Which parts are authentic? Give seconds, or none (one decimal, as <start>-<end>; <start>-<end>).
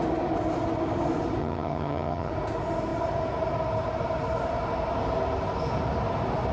0.0-1.4; 2.3-6.5